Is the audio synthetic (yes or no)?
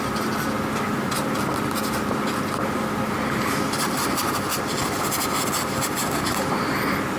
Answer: no